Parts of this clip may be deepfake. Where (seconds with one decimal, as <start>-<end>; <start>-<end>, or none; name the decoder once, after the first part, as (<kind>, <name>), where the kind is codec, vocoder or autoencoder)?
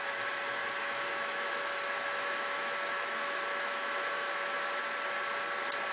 0.0-4.8 (autoencoder, DAC-VAE)